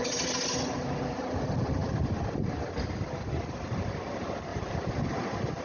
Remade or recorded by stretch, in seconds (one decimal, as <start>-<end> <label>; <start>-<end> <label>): 0.0-4.5 recorded; 4.5-5.6 remade